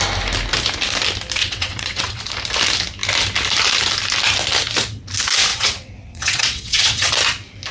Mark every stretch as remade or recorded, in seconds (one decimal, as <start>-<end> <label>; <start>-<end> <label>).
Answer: 0.0-1.4 recorded; 1.4-2.2 remade; 2.2-5.5 recorded; 5.5-7.1 remade; 7.1-7.7 recorded